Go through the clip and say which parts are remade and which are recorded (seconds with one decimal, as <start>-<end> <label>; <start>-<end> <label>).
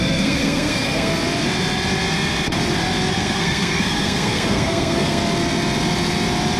0.0-1.1 remade; 1.1-3.1 recorded; 3.1-5.2 remade; 5.2-6.6 recorded